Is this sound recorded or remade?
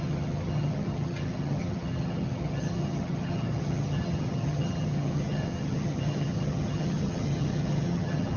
remade